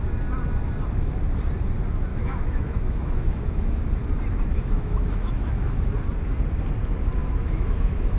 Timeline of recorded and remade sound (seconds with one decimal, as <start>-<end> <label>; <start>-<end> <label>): 0.0-2.1 recorded; 2.1-3.8 remade; 3.8-4.5 recorded; 4.5-5.8 remade; 5.8-7.2 recorded; 7.2-8.2 remade